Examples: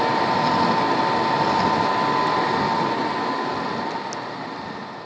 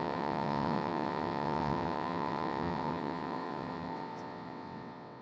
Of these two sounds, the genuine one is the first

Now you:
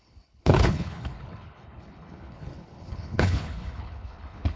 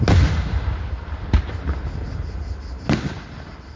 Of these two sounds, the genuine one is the second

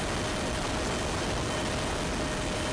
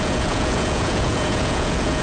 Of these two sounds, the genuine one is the first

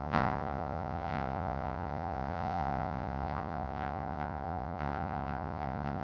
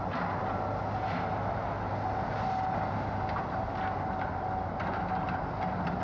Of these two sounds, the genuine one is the second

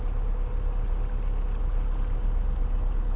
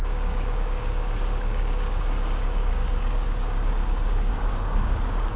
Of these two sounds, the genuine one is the first